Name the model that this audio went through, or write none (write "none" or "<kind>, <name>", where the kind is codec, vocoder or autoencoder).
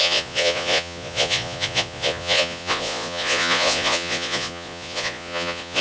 vocoder, Vocos